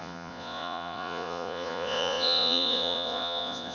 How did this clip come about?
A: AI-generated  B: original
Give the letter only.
A